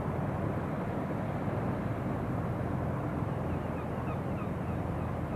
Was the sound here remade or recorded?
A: recorded